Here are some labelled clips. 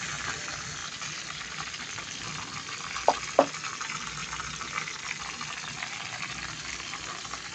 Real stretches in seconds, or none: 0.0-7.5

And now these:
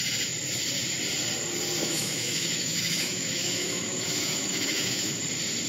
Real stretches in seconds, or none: 0.0-1.8; 5.2-5.7

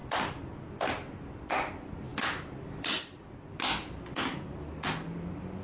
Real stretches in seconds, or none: 0.9-2.1; 4.4-5.6

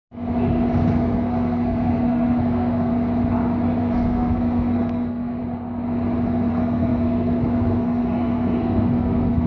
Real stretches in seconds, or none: 0.0-0.9; 2.9-3.8; 5.4-6.5

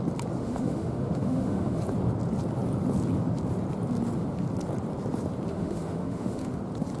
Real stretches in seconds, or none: 0.0-0.4; 1.8-5.5; 6.6-7.0

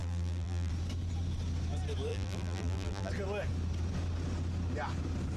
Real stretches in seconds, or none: 0.7-2.1; 3.1-5.4